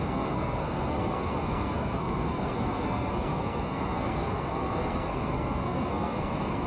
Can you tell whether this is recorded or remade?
remade